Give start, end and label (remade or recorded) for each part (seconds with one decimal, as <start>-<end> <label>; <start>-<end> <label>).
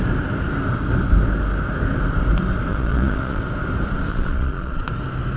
0.0-2.7 recorded; 2.7-3.4 remade; 3.4-4.1 recorded; 4.1-4.9 remade; 4.9-5.4 recorded